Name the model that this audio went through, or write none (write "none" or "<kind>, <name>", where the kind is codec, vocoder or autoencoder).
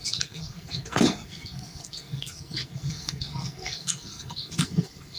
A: codec, SNAC